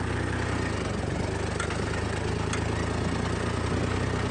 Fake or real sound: real